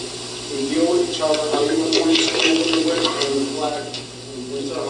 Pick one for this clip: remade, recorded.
recorded